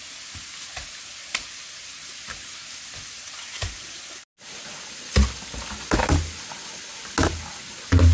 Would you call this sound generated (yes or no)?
no